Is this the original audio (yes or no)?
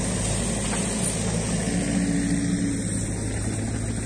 yes